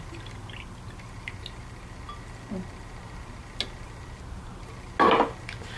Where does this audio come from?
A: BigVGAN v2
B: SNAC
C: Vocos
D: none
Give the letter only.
D